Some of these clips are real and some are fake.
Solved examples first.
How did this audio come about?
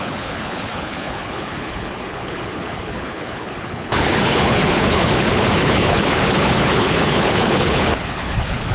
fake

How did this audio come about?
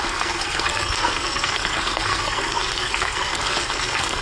fake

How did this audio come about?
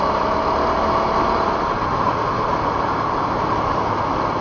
real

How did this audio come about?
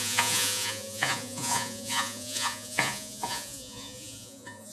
fake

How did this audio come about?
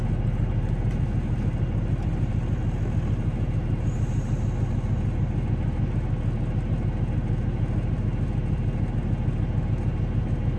real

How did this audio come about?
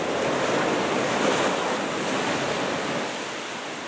real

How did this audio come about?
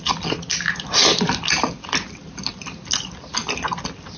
real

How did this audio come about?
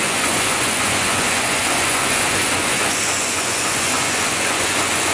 fake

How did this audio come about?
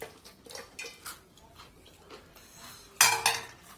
real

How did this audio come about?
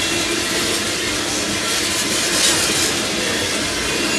real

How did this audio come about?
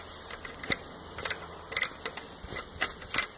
real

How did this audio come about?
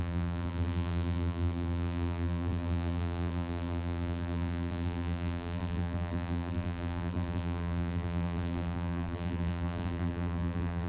fake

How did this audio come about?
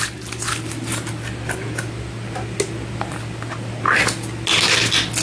real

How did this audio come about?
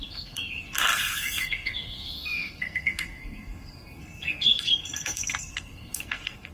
fake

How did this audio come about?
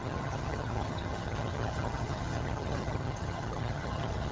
fake